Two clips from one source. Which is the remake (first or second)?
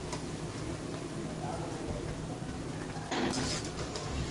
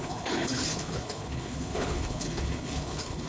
second